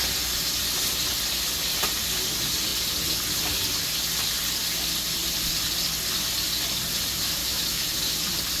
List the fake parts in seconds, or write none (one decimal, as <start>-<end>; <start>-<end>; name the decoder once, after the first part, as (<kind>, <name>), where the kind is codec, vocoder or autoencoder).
7.4-8.0 (autoencoder, DAC-VAE)